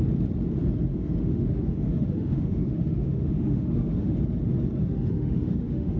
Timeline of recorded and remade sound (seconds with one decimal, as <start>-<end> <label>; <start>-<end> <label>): 0.0-0.9 recorded; 0.9-4.2 remade; 4.2-4.8 recorded; 4.8-6.0 remade

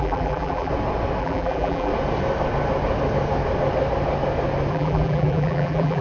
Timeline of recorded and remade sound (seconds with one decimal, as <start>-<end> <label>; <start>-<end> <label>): 0.0-0.7 remade; 0.7-1.2 recorded; 1.2-1.9 remade; 1.9-4.7 recorded; 4.7-6.0 remade

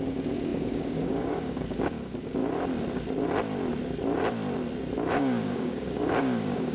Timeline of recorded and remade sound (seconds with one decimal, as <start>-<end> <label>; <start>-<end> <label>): 0.0-2.4 remade; 2.4-5.1 recorded; 5.1-6.7 remade

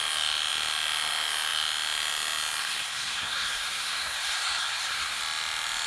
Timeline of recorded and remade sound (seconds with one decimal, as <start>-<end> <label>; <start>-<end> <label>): 0.0-2.6 recorded; 2.6-5.2 remade; 5.2-5.9 recorded

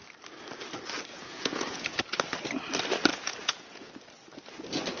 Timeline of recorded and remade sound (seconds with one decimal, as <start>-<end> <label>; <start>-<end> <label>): 0.0-1.1 recorded; 1.1-2.0 remade; 2.0-3.1 recorded; 3.1-3.9 remade; 3.9-5.0 recorded

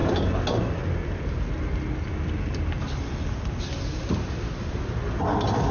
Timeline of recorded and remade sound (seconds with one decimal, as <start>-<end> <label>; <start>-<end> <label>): 0.0-5.7 recorded